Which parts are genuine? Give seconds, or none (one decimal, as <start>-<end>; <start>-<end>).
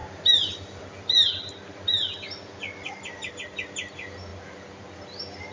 0.0-5.5